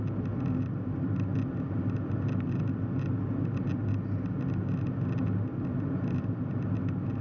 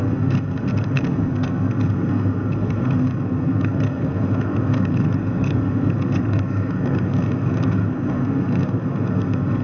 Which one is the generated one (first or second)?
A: second